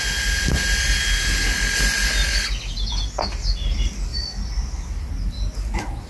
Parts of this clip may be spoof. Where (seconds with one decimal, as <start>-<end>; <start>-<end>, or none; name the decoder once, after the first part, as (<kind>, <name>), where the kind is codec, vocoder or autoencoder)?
none